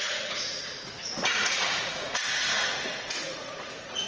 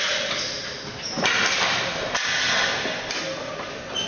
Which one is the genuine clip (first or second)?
second